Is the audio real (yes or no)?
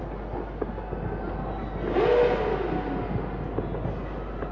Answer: yes